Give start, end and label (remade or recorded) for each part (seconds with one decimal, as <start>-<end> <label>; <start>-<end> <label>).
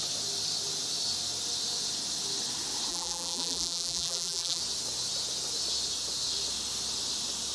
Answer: 0.0-2.9 recorded; 2.9-4.6 remade; 4.6-7.5 recorded